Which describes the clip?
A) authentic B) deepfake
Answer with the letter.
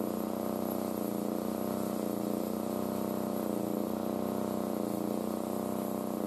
A